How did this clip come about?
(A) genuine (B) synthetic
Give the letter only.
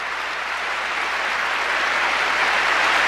A